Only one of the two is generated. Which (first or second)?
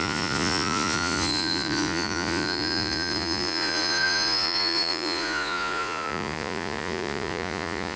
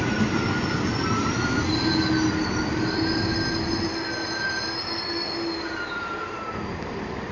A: first